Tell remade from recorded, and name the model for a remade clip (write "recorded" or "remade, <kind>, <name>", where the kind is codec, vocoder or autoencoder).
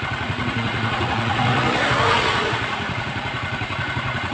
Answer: remade, vocoder, Vocos